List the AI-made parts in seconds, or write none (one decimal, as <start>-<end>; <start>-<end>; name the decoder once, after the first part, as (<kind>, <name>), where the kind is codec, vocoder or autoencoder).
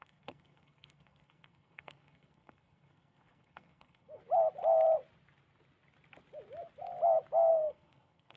0.0-4.2 (codec, SNAC); 7.5-8.4